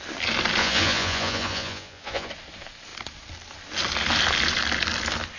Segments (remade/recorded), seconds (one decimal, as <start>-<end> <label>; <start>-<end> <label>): 0.0-0.6 recorded; 0.6-2.3 remade; 2.3-5.4 recorded